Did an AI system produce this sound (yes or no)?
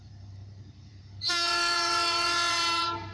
yes